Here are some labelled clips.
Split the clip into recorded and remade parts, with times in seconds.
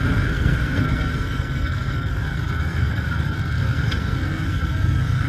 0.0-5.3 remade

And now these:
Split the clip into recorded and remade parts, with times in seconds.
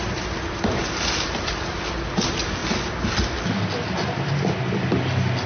0.0-5.5 recorded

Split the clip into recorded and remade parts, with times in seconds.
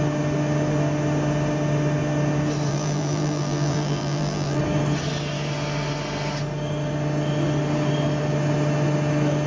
0.0-2.7 recorded; 2.7-4.6 remade; 4.6-9.5 recorded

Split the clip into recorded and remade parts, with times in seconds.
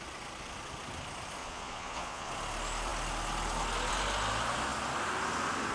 0.0-1.4 recorded; 1.4-2.3 remade; 2.3-5.7 recorded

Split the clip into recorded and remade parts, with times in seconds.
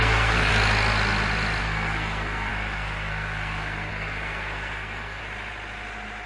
0.0-0.5 remade; 0.5-1.6 recorded; 1.6-5.2 remade; 5.2-6.3 recorded